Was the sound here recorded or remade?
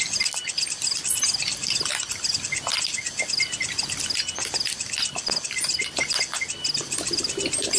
recorded